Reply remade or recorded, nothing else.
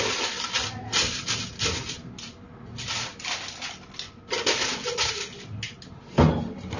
recorded